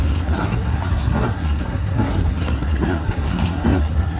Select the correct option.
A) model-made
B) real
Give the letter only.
A